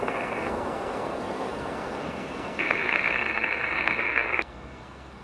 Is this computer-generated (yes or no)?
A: yes